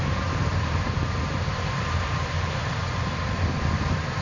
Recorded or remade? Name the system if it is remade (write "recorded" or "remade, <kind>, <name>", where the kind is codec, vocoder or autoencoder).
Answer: remade, vocoder, BigVGAN v2